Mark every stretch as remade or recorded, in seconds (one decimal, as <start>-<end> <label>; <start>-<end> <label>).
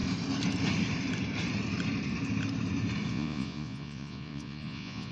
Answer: 0.0-3.1 recorded; 3.1-5.1 remade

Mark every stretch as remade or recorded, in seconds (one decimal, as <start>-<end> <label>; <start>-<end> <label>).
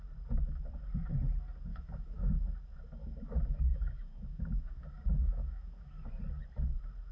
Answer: 0.0-1.7 recorded; 1.7-2.3 remade; 2.3-3.0 recorded; 3.0-6.2 remade; 6.2-7.1 recorded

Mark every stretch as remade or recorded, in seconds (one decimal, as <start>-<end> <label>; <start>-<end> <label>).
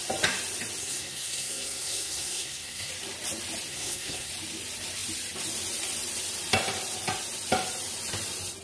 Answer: 0.0-0.8 recorded; 0.8-2.9 remade; 2.9-3.7 recorded; 3.7-4.3 remade; 4.3-8.6 recorded